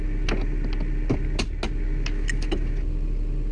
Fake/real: real